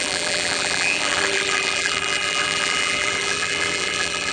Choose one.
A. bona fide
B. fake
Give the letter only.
B